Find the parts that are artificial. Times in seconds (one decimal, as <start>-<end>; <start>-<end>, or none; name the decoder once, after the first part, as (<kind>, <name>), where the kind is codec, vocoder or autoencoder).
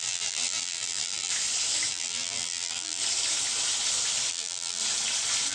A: 0.0-1.3 (vocoder, BigVGAN v2); 1.9-3.0; 4.3-4.8